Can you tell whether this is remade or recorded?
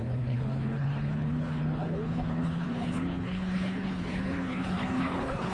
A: remade